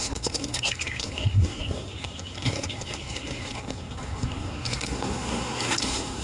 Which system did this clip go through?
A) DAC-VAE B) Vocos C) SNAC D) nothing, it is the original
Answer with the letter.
C